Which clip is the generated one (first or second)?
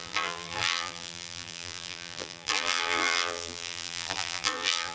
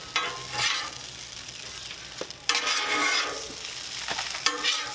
first